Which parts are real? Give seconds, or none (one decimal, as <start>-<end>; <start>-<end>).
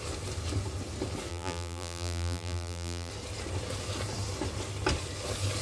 0.0-1.3; 3.1-5.6